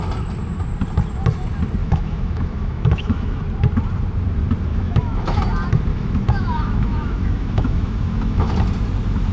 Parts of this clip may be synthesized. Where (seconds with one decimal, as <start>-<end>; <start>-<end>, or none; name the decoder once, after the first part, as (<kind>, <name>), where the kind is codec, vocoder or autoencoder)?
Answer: 1.8-3.4 (autoencoder, DAC-VAE); 4.7-5.4; 5.9-8.5